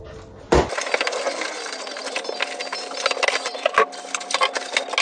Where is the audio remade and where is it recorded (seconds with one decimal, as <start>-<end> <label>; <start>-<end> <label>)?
0.0-5.0 recorded